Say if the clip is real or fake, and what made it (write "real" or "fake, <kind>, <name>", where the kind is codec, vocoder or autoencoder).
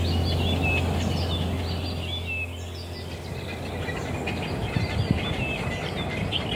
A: real